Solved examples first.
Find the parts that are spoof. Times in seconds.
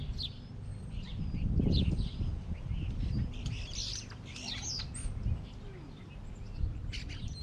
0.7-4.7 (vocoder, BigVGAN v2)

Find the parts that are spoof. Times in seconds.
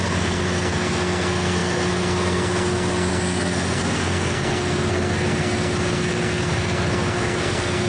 0.0-7.9 (codec, SNAC)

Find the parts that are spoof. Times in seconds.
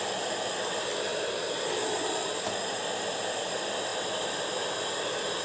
none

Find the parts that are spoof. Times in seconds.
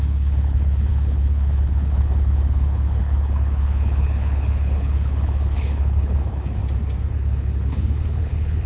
0.0-6.6 (codec, HILCodec); 7.1-8.7